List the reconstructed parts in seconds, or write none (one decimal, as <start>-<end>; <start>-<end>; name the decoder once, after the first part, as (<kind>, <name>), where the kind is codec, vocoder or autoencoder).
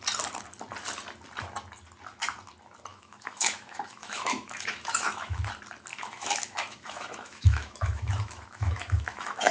2.9-5.5 (autoencoder, DAC-VAE); 5.9-9.5